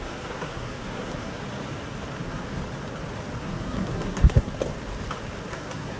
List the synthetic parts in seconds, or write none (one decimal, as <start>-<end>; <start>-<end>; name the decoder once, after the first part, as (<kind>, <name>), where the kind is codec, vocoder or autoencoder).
0.0-1.4 (codec, SNAC); 2.2-2.6; 3.4-4.5; 5.5-6.0